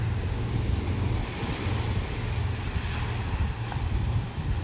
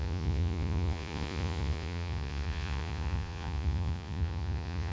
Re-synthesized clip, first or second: second